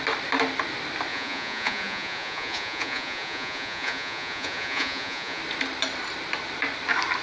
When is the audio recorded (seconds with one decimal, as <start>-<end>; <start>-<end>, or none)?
0.0-1.1; 5.4-7.2